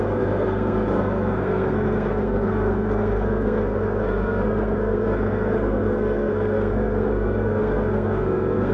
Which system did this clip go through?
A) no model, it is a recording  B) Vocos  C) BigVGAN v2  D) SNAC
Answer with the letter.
D